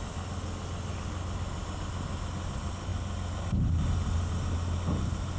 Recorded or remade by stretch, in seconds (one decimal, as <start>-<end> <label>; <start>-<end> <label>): 0.0-5.4 recorded

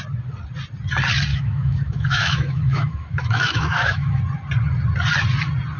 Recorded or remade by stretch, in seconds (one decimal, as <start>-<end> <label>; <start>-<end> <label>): 0.0-1.3 recorded; 1.3-4.2 remade; 4.2-5.8 recorded